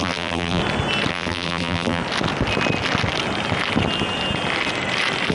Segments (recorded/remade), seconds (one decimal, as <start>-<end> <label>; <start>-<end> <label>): 0.0-0.6 remade; 0.6-1.1 recorded; 1.1-2.0 remade; 2.0-5.3 recorded